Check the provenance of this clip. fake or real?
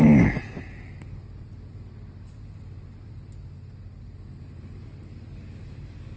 real